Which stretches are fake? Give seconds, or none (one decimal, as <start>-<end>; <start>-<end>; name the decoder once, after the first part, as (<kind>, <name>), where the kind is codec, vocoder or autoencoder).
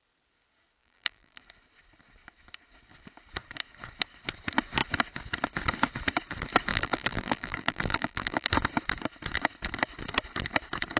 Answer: 0.8-1.4 (vocoder, BigVGAN v2); 6.7-8.5